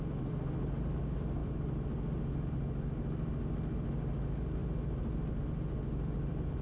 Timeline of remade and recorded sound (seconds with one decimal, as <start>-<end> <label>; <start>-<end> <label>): 0.0-6.6 recorded